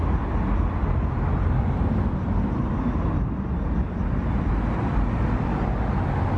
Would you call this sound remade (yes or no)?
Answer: no